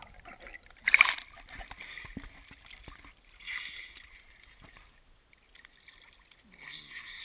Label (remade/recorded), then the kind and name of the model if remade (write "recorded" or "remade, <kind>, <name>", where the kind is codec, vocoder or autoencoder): recorded